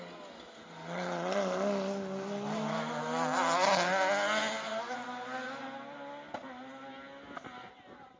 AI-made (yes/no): no